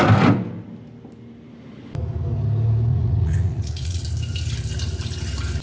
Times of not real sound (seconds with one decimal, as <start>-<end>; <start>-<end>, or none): 2.9-4.0